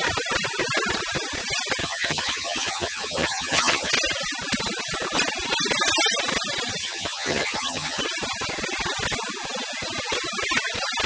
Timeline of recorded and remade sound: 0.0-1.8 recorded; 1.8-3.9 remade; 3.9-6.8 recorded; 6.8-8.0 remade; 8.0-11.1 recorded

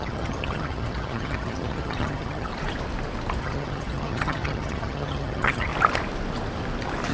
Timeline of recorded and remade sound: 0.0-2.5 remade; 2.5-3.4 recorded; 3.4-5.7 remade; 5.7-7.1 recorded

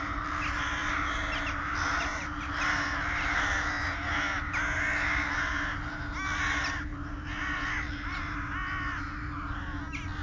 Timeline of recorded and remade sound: 0.0-10.2 recorded

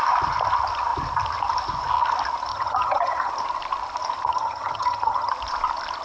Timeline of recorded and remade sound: 0.0-2.5 recorded; 2.5-3.3 remade; 3.3-4.3 recorded; 4.3-5.3 remade; 5.3-6.0 recorded

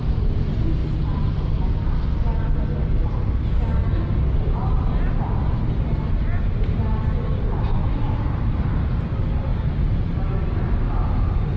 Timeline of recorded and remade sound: 0.0-11.6 recorded